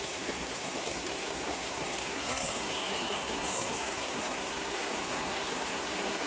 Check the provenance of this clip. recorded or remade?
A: remade